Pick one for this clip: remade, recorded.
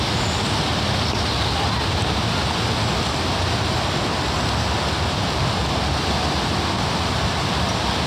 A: recorded